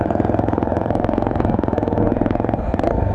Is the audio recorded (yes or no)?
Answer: no